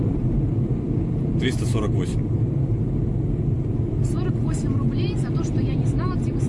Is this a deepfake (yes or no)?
yes